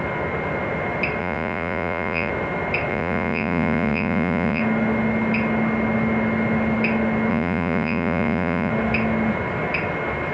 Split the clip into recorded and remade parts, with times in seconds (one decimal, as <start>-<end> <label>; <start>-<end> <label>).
0.0-1.2 recorded; 1.2-2.3 remade; 2.3-2.9 recorded; 2.9-4.6 remade; 4.6-7.3 recorded; 7.3-8.7 remade; 8.7-10.3 recorded